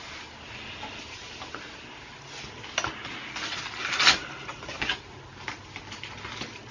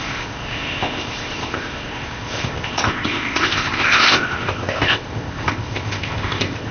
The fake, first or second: second